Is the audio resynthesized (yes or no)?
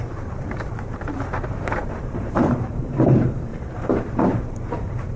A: yes